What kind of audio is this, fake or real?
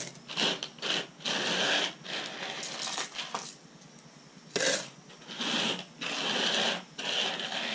real